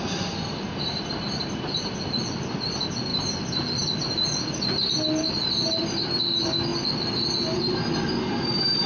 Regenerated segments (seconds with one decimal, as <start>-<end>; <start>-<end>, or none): none